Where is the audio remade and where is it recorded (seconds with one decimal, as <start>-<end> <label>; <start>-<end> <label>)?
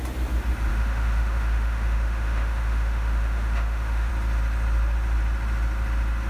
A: 0.0-0.7 recorded; 0.7-4.1 remade; 4.1-6.3 recorded